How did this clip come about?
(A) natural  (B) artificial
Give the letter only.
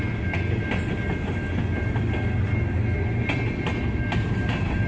A